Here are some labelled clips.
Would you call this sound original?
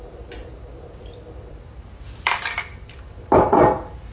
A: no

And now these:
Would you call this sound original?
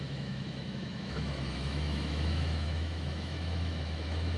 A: no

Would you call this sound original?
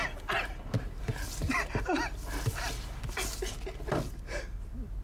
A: yes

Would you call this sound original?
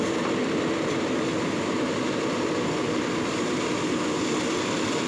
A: no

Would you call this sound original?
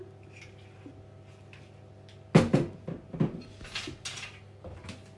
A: yes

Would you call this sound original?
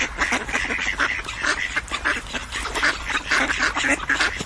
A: yes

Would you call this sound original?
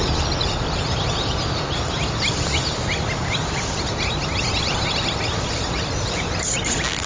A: yes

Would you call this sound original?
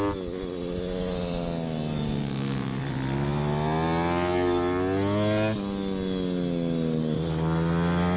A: yes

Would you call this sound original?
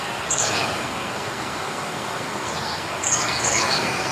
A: no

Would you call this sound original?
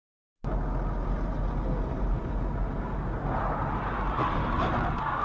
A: yes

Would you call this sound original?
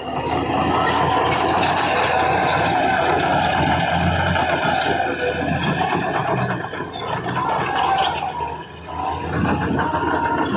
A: yes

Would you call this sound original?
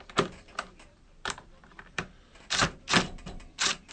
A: no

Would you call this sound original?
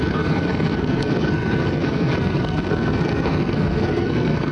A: no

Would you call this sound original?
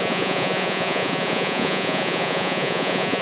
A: no